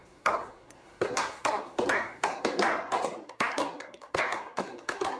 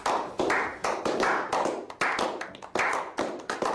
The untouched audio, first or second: second